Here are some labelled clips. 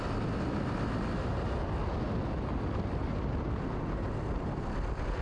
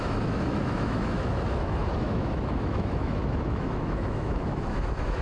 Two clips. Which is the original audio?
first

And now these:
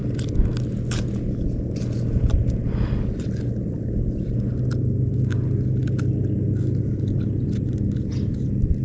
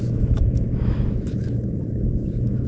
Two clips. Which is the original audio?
first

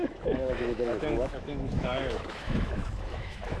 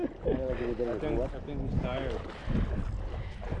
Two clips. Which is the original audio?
second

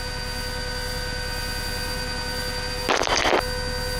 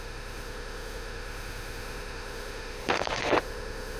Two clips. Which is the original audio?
first